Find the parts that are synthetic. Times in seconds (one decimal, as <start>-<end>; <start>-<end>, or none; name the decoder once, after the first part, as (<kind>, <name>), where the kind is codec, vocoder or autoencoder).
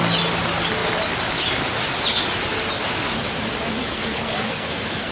3.8-5.1 (codec, SNAC)